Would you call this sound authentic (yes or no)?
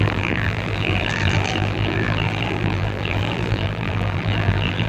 no